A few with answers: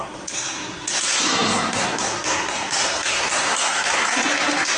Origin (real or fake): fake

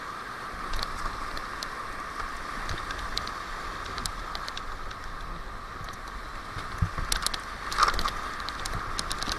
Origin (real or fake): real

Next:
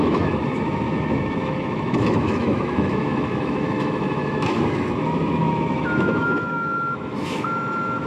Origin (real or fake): fake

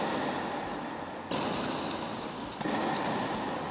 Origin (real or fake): real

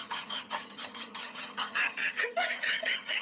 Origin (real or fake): fake